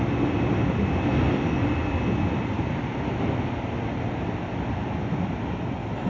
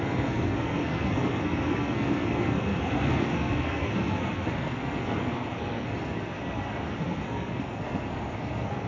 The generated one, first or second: second